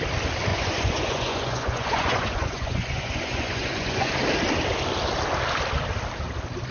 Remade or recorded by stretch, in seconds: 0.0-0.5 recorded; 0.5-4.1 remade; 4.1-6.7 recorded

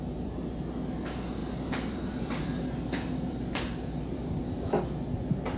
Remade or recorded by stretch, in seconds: 0.0-1.4 recorded; 1.4-4.8 remade; 4.8-5.6 recorded

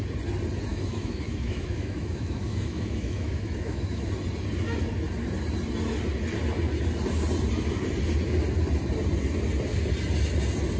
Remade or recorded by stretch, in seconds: 0.0-0.7 recorded; 0.7-4.0 remade; 4.0-10.8 recorded

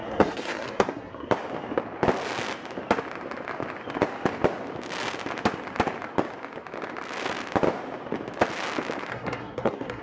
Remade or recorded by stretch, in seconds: 0.0-1.3 remade; 1.3-9.1 recorded; 9.1-10.0 remade